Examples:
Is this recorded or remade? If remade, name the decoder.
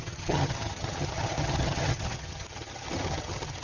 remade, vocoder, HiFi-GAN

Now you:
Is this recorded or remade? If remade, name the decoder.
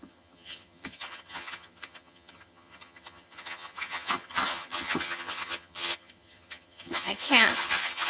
remade, vocoder, HiFi-GAN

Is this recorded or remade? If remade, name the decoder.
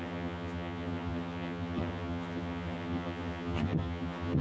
remade, vocoder, HiFi-GAN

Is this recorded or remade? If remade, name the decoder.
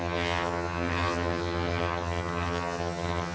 remade, vocoder, HiFi-GAN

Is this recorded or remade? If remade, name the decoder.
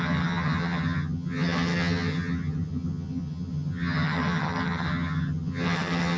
remade, vocoder, HiFi-GAN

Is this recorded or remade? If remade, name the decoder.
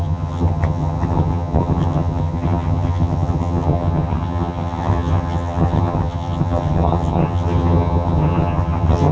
remade, vocoder, HiFi-GAN